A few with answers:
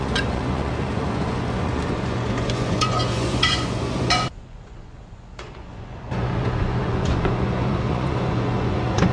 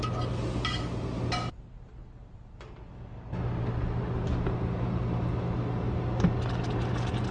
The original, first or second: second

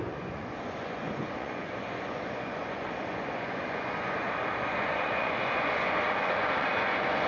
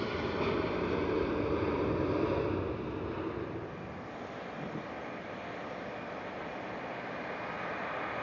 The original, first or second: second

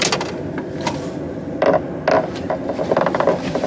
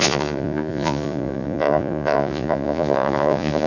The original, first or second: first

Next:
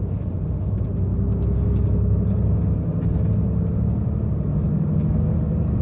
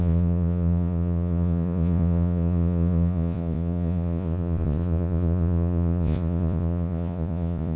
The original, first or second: first